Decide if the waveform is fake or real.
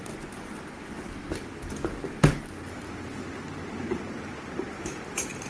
real